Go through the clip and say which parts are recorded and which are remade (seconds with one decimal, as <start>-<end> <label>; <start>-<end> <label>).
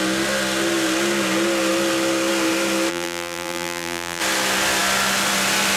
0.0-2.9 recorded; 2.9-4.2 remade; 4.2-5.8 recorded